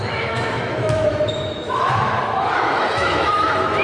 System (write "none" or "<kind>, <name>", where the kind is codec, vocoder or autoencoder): autoencoder, DAC-VAE